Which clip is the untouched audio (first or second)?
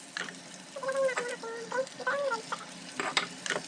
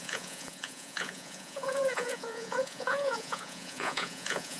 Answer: first